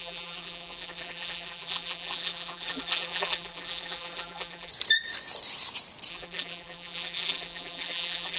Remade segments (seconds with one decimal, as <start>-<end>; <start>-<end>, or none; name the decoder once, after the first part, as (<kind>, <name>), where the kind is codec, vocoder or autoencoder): 0.0-4.7 (vocoder, BigVGAN v2); 6.1-8.4